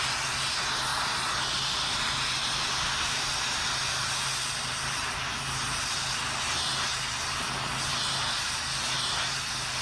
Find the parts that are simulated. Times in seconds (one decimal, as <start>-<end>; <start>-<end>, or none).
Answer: none